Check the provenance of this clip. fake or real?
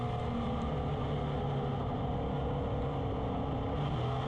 real